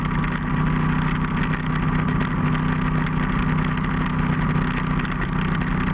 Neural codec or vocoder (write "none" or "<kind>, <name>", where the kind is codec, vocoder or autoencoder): none